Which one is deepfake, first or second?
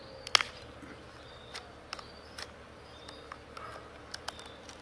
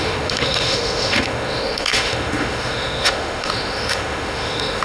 second